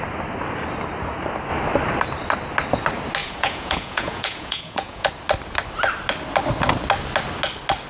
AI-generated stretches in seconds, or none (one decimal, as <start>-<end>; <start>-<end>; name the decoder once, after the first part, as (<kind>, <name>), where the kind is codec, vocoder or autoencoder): 3.2-5.1 (vocoder, Vocos)